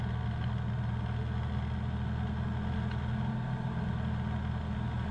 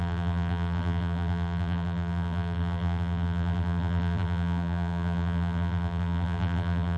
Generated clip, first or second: second